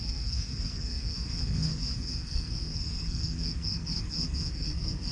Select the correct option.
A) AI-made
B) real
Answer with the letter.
A